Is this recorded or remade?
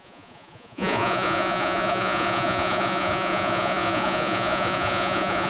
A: remade